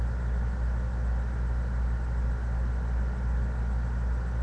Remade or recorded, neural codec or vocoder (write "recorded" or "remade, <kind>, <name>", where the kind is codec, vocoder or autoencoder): recorded